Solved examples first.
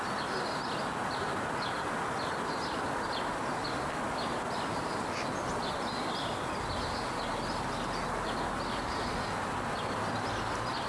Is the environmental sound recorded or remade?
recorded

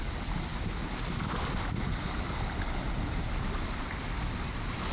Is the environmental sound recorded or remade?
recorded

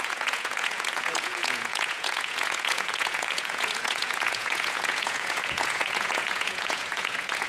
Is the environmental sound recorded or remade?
remade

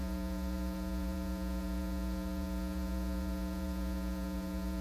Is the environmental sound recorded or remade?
remade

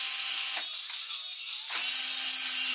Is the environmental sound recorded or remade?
recorded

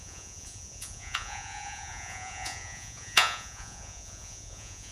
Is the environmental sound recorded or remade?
remade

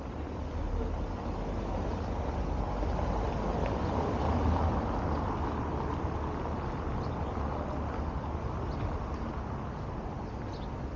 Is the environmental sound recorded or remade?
recorded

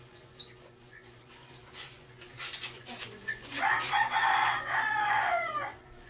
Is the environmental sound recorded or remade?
remade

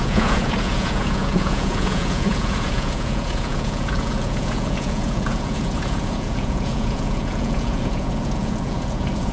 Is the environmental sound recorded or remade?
remade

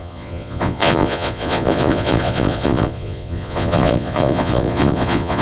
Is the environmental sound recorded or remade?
remade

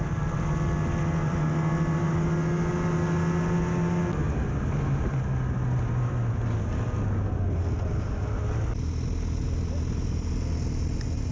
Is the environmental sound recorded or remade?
recorded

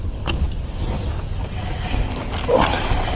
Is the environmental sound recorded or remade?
recorded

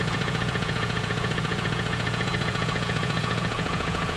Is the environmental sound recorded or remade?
remade